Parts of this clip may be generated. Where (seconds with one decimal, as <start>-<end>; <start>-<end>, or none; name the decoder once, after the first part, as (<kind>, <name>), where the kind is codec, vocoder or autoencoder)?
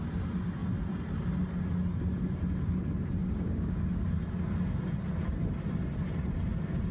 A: 3.2-3.8 (codec, DAC)